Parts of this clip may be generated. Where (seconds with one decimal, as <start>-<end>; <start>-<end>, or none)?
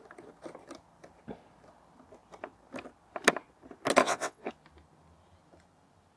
4.0-4.5